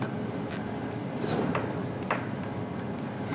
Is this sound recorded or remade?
recorded